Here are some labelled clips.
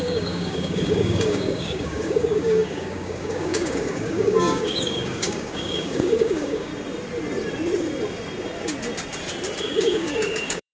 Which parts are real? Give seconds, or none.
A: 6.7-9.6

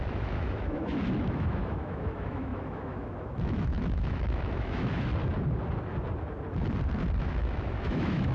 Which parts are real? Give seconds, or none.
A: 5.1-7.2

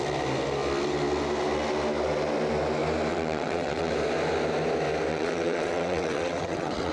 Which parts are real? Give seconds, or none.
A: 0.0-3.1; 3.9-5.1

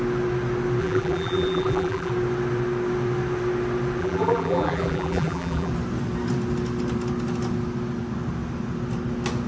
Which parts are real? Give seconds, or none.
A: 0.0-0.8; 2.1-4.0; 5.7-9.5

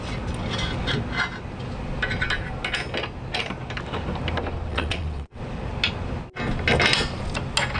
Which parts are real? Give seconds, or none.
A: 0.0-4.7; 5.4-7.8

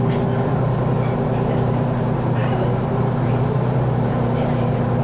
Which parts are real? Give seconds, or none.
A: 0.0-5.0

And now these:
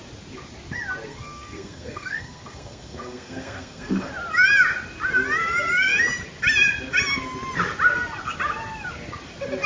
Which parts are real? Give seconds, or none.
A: 0.0-1.1; 4.1-9.7

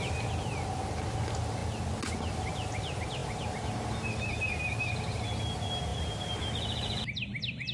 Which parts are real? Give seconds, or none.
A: 0.0-7.7